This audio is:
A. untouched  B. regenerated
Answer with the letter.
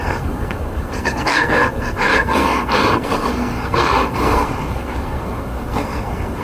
B